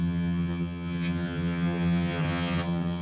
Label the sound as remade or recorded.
remade